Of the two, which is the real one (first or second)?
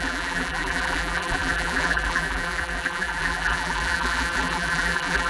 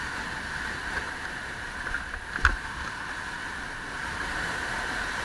second